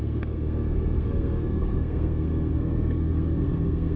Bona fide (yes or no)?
no